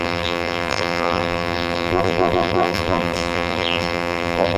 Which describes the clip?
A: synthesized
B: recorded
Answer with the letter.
A